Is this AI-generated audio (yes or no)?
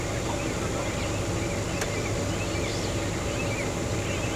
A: no